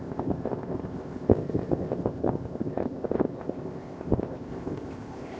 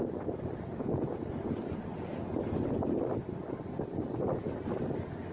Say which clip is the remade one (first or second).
first